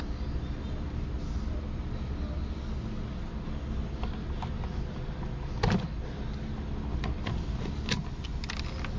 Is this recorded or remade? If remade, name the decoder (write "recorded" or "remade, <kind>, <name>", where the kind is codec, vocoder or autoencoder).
recorded